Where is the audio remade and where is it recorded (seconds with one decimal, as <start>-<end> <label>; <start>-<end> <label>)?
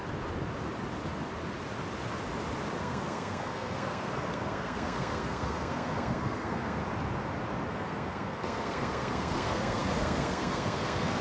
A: 0.0-2.8 recorded; 2.8-6.8 remade; 6.8-7.7 recorded; 7.7-11.2 remade